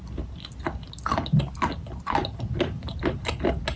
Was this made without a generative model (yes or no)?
yes